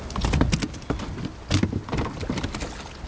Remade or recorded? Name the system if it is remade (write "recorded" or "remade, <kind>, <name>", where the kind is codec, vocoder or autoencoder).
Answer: recorded